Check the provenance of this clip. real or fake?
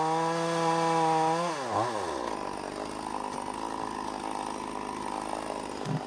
real